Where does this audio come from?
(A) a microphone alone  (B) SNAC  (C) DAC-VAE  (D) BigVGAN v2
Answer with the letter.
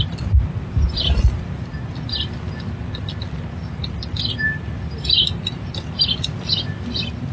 A